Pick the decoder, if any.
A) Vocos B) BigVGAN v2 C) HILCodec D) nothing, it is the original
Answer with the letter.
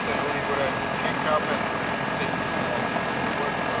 D